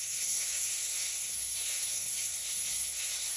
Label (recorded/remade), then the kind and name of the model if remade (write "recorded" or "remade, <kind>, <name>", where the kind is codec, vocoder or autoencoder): remade, codec, SNAC